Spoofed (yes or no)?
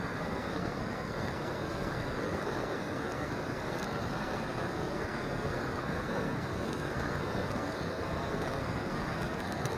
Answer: yes